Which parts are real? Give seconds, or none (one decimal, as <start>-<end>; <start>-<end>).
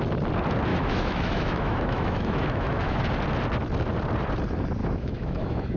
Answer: 0.0-0.7; 3.0-4.8